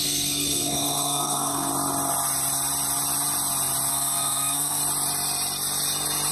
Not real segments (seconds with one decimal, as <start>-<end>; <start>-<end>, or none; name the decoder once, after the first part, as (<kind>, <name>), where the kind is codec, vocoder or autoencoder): 0.0-1.7 (codec, SNAC); 3.9-4.8